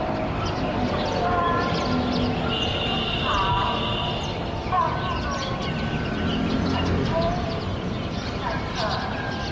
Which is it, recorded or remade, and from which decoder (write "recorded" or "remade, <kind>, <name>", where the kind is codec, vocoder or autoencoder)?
recorded